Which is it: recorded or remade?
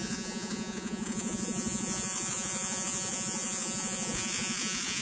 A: remade